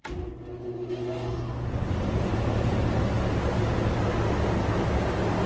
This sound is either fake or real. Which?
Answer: real